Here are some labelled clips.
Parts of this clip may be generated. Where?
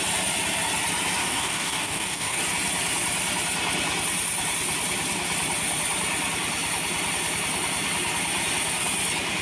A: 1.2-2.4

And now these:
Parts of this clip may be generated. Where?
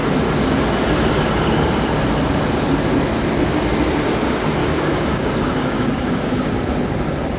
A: 4.6-6.5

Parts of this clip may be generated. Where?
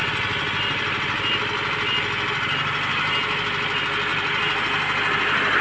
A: none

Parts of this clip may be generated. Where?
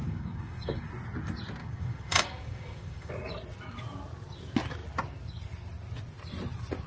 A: 0.0-0.9; 1.6-3.1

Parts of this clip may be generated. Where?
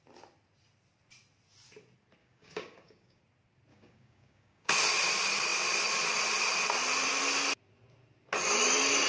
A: 2.2-3.2; 3.7-4.7